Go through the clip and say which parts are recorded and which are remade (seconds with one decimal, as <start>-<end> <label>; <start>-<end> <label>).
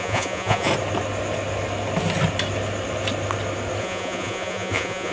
0.0-0.7 remade; 0.7-3.8 recorded; 3.8-5.1 remade